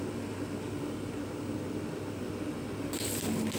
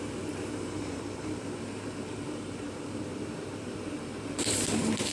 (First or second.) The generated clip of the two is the second